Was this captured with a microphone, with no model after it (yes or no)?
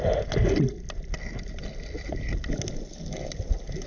yes